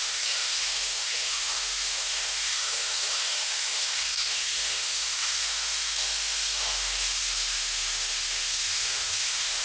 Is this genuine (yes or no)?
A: no